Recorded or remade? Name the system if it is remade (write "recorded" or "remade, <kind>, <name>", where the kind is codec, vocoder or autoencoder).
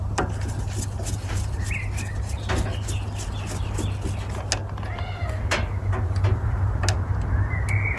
recorded